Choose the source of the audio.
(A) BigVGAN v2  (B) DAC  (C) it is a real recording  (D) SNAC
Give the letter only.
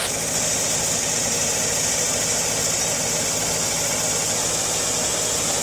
C